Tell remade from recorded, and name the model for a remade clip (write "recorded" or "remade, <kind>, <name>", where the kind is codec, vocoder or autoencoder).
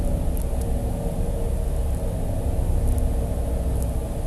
recorded